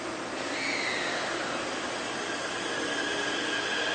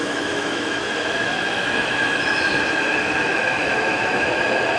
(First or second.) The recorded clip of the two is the first